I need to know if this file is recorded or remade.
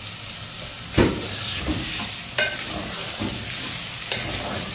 remade